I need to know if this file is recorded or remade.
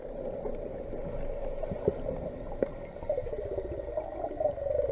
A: recorded